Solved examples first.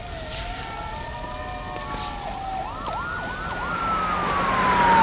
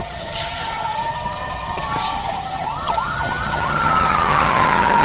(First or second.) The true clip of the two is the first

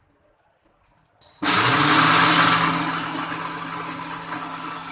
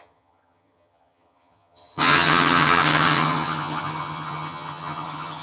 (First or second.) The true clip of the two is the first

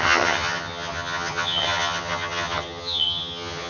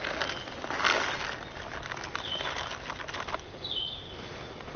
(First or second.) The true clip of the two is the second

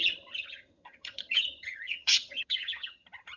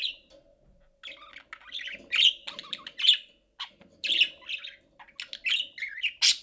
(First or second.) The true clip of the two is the second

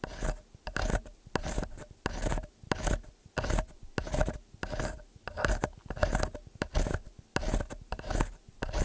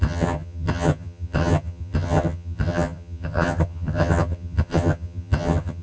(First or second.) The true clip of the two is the first